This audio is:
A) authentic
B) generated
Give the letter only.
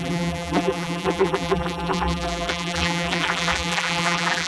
B